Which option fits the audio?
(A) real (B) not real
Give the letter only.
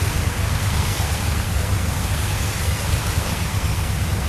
B